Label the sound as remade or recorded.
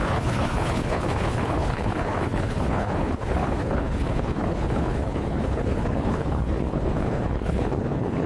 remade